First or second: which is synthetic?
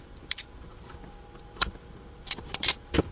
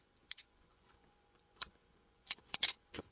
second